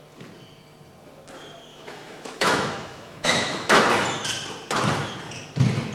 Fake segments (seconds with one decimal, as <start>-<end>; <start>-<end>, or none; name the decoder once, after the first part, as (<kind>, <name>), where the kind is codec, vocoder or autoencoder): 1.7-3.8 (autoencoder, DAC-VAE)